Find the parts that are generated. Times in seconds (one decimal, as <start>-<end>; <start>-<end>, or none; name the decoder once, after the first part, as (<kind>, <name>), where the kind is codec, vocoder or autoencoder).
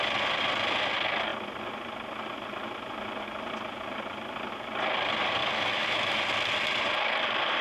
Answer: 5.4-6.2 (autoencoder, DAC-VAE)